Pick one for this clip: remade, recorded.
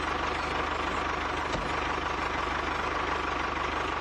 recorded